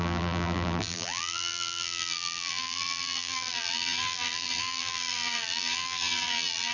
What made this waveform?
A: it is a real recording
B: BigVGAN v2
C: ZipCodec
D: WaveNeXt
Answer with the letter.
B